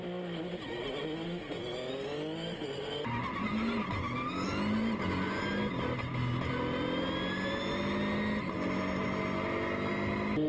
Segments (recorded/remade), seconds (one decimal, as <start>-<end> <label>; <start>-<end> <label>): 0.0-10.5 recorded